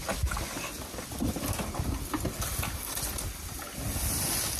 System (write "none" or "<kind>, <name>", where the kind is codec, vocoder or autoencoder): none